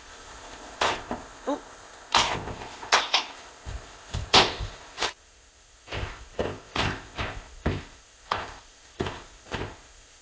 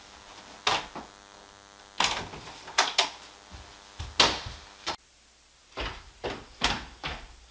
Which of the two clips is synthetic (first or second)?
first